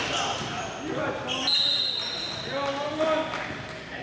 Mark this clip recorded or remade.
recorded